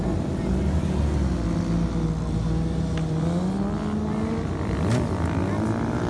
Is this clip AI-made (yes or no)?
no